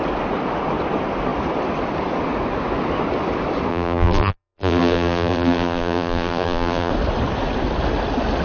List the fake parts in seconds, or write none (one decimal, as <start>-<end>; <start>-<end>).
3.7-6.9